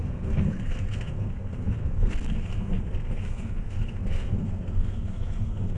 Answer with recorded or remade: remade